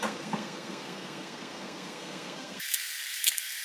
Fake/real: fake